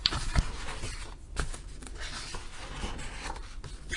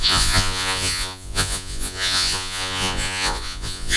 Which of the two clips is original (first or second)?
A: first